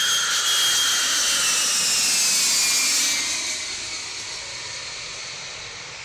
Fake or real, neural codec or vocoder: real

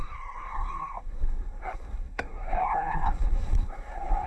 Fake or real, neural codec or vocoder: fake, codec, SNAC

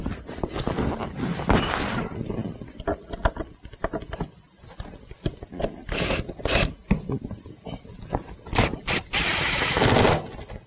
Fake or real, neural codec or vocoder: real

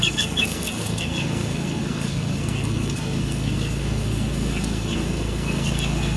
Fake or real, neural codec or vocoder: fake, codec, SNAC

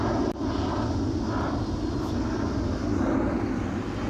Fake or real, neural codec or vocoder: real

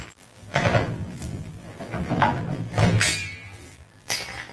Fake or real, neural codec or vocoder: fake, vocoder, BigVGAN v2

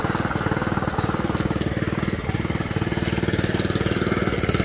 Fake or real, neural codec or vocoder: real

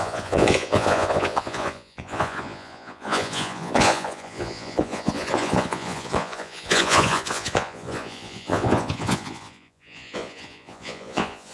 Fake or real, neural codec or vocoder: fake, vocoder, Vocos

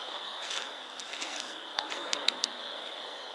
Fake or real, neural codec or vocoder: fake, codec, SNAC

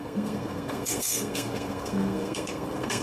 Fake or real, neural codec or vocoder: fake, codec, SNAC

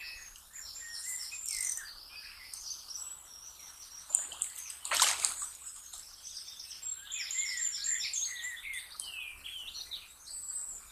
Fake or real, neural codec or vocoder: real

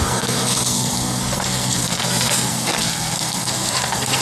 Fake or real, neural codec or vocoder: fake, codec, SNAC